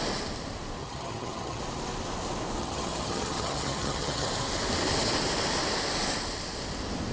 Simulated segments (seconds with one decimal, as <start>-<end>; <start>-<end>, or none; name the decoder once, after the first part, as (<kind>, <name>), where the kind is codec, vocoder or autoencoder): 0.8-1.6 (vocoder, HiFi-GAN); 2.6-4.3